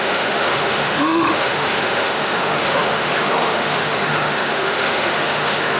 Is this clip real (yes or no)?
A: no